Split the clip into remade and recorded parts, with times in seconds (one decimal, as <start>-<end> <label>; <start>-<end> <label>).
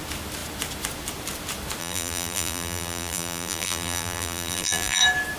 0.0-1.8 recorded; 1.8-5.0 remade; 5.0-5.4 recorded